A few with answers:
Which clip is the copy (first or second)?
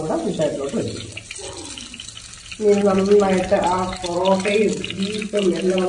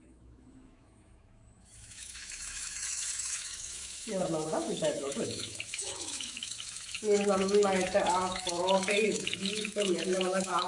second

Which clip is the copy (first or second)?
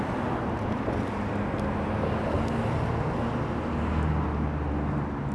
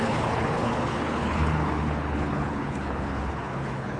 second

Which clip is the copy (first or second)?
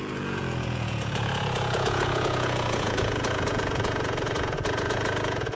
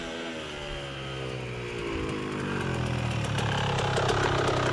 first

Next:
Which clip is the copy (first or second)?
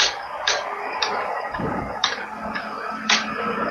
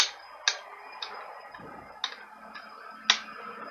first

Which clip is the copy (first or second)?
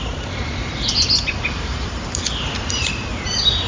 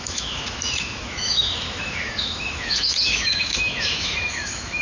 second